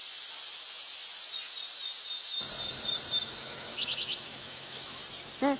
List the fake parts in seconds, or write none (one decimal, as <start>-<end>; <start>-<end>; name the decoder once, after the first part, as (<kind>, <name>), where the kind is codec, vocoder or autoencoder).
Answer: 3.4-5.0 (autoencoder, DAC-VAE)